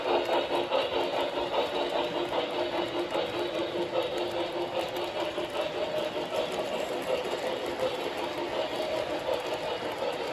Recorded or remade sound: recorded